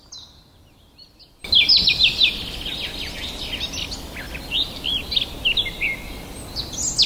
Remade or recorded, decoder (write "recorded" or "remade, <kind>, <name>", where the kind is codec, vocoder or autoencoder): recorded